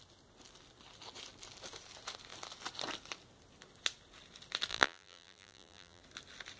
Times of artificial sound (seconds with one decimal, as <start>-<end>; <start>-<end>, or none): 4.7-6.0